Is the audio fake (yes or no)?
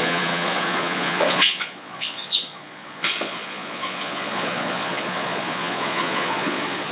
yes